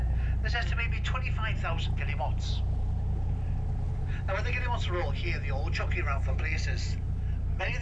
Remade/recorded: recorded